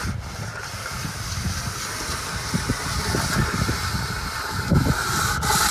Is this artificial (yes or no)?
yes